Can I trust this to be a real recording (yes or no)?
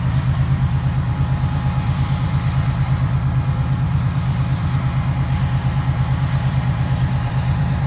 no